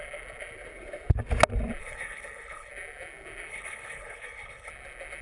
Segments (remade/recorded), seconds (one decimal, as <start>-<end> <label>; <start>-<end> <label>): 0.0-1.8 recorded; 1.8-2.7 remade; 2.7-3.5 recorded; 3.5-4.7 remade; 4.7-5.2 recorded